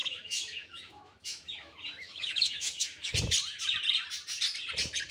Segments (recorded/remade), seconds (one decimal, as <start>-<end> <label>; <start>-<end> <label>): 0.0-3.1 remade; 3.1-5.1 recorded